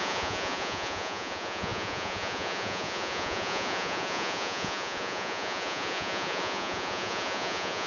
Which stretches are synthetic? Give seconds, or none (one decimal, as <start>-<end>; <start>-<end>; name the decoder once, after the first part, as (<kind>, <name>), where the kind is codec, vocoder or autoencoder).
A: 0.0-7.9 (vocoder, Vocos)